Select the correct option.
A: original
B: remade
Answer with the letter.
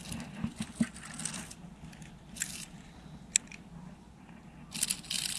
A